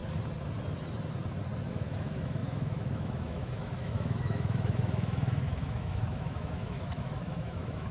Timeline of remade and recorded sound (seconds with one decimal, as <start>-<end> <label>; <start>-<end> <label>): 0.0-1.7 recorded; 1.7-7.9 remade

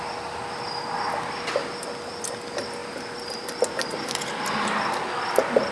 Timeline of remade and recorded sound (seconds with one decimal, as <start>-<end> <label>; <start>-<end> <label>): 0.0-5.7 recorded

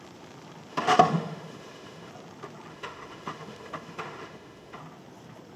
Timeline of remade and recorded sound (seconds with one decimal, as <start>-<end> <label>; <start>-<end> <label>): 0.0-0.7 recorded; 0.7-2.1 remade; 2.1-2.7 recorded; 2.7-4.8 remade; 4.8-5.6 recorded

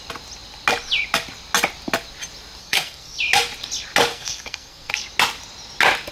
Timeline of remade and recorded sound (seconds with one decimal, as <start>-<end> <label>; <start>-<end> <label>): 0.0-2.6 recorded; 2.6-3.2 remade; 3.2-4.1 recorded; 4.1-4.9 remade; 4.9-6.1 recorded

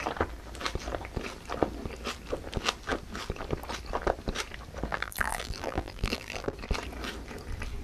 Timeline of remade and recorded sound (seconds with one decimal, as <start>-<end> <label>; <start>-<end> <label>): 0.0-4.9 recorded; 4.9-6.5 remade; 6.5-7.8 recorded

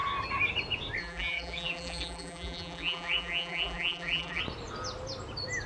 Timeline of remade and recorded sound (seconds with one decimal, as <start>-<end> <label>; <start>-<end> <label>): 0.0-1.0 recorded; 1.0-4.4 remade; 4.4-5.7 recorded

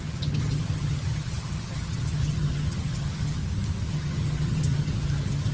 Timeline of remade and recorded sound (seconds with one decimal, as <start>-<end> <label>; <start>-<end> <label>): 0.0-3.4 remade; 3.4-3.9 recorded; 3.9-5.5 remade

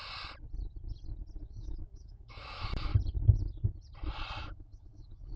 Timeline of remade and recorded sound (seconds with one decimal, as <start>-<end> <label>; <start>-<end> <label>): 0.0-1.4 recorded; 1.4-2.9 remade; 2.9-4.4 recorded; 4.4-5.4 remade